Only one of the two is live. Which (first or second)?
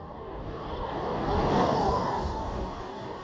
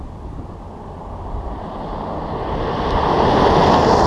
second